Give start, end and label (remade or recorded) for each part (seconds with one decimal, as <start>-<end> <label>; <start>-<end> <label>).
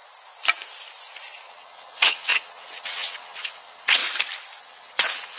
0.0-1.5 recorded; 1.5-4.0 remade; 4.0-4.6 recorded; 4.6-5.4 remade